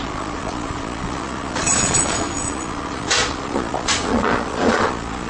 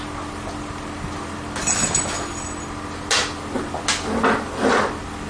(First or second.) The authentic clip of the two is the second